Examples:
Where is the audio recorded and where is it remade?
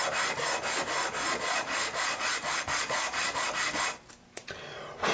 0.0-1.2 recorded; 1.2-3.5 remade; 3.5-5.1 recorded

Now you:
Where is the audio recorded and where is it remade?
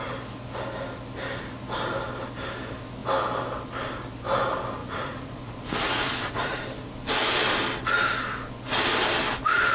0.0-4.8 recorded; 4.8-6.6 remade; 6.6-9.7 recorded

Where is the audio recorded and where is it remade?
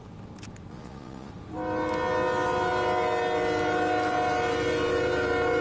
0.0-0.7 recorded; 0.7-1.3 remade; 1.3-5.6 recorded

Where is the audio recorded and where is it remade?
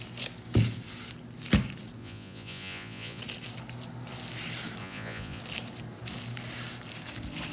0.0-2.0 recorded; 2.0-3.2 remade; 3.2-4.8 recorded; 4.8-5.4 remade; 5.4-7.5 recorded